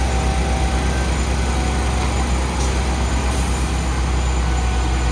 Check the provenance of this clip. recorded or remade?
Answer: recorded